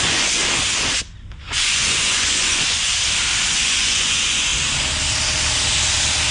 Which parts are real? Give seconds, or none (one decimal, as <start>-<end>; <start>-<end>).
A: 0.4-1.4; 2.9-3.5; 4.5-6.3